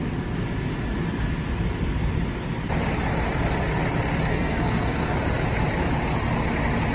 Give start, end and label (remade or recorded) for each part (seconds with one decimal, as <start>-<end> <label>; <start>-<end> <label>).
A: 0.0-4.3 recorded; 4.3-5.1 remade; 5.1-6.9 recorded